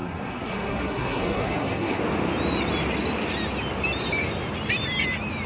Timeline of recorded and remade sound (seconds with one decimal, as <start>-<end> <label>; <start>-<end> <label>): 0.0-2.0 remade; 2.0-5.5 recorded